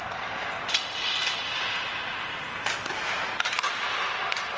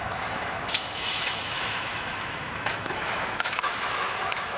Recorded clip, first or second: first